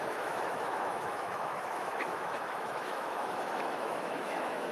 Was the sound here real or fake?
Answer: fake